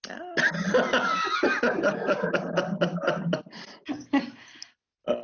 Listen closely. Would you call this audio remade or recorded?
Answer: recorded